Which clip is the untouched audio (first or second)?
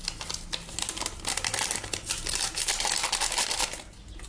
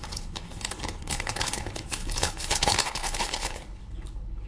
first